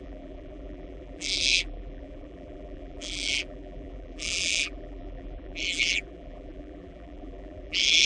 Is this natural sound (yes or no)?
no